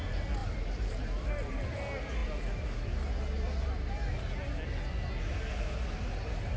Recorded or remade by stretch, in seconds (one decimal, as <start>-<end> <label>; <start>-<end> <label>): 0.0-6.6 recorded